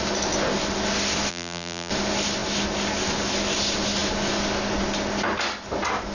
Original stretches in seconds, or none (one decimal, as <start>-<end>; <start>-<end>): 0.0-1.3; 1.9-6.1

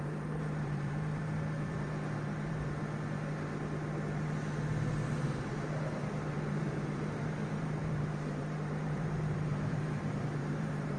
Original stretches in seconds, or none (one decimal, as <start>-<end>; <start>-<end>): 2.8-6.3

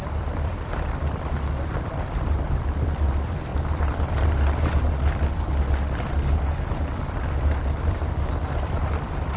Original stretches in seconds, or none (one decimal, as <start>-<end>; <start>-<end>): 3.5-7.9

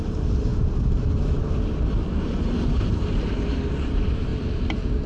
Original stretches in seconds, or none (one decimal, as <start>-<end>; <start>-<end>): 0.5-2.2; 4.3-5.1